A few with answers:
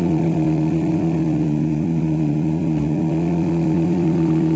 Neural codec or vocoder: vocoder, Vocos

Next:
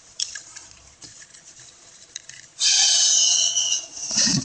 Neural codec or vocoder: vocoder, Vocos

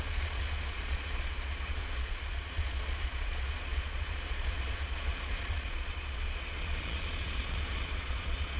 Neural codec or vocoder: vocoder, Vocos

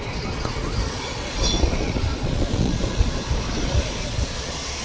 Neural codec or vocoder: vocoder, Vocos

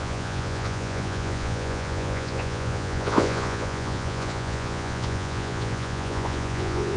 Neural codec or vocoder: vocoder, Vocos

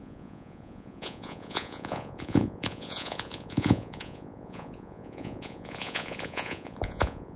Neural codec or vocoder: vocoder, Vocos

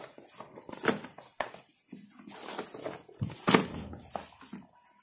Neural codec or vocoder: none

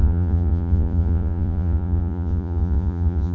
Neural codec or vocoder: vocoder, Vocos